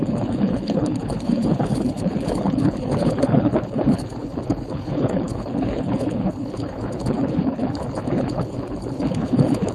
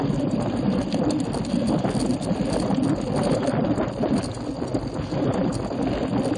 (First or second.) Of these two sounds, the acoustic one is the second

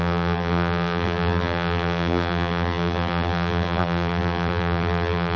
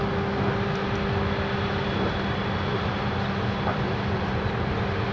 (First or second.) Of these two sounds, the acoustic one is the second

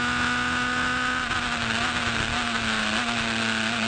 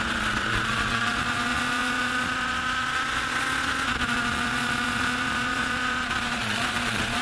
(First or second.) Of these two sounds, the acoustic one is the first